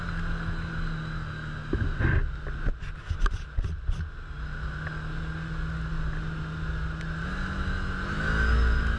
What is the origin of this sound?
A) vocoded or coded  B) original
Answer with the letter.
B